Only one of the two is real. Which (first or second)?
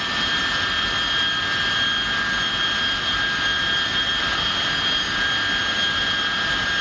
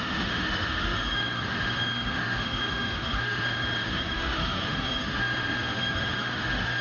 first